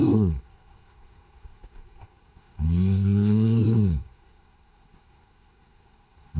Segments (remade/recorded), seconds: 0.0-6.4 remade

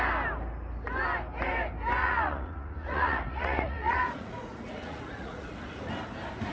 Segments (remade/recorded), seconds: 0.0-2.0 recorded; 2.0-5.9 remade; 5.9-6.5 recorded